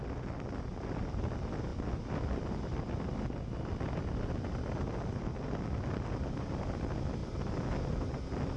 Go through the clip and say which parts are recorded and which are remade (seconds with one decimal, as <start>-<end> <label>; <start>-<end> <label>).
0.0-8.6 recorded